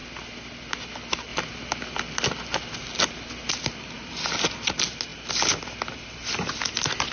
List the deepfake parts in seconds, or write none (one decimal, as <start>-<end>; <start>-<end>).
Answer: none